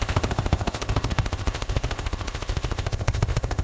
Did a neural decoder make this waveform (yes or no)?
yes